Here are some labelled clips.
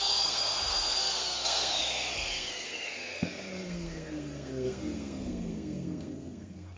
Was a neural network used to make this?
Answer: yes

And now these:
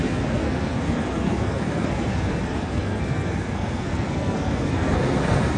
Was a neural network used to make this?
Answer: yes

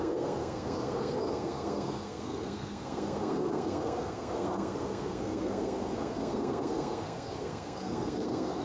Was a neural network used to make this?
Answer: yes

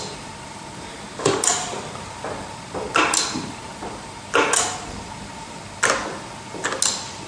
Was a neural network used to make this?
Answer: no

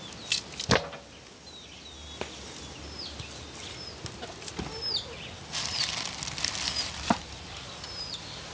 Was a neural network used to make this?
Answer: no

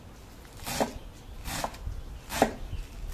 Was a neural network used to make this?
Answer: no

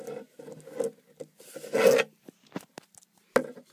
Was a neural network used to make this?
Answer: no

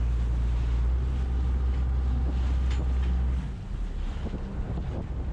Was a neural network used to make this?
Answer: no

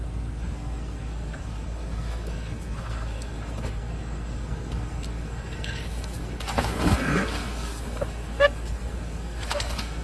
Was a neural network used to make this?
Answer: yes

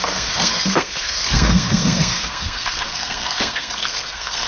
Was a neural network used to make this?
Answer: yes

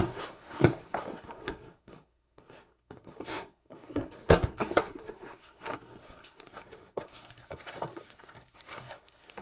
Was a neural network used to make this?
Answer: yes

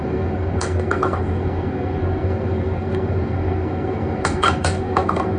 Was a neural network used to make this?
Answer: yes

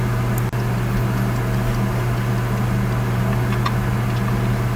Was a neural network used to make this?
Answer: no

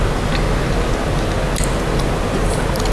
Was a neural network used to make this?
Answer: no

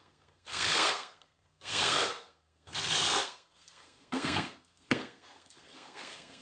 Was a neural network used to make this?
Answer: yes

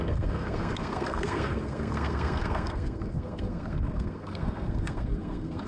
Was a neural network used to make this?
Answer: yes